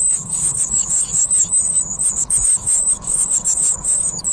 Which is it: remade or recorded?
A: remade